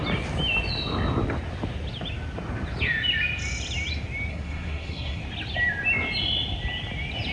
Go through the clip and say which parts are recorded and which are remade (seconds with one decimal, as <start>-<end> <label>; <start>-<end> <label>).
0.0-4.3 recorded; 4.3-5.2 remade; 5.2-7.3 recorded